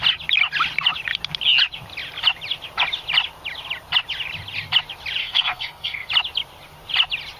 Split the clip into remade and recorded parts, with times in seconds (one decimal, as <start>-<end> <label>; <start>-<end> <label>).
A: 0.0-5.2 recorded; 5.2-6.1 remade; 6.1-7.4 recorded